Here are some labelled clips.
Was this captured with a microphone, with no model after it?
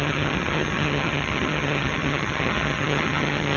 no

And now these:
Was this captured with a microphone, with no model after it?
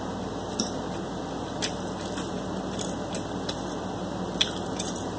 yes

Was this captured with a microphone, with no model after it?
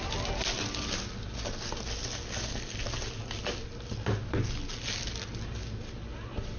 yes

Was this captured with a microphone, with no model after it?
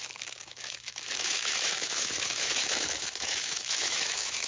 no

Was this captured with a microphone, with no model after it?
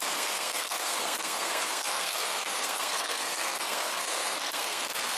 no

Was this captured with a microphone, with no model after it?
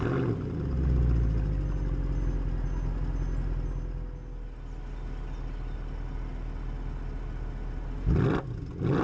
yes